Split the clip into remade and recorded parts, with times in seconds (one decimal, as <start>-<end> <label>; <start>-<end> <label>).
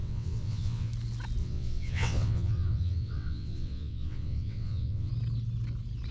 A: 0.0-0.9 remade; 0.9-1.4 recorded; 1.4-5.1 remade; 5.1-6.1 recorded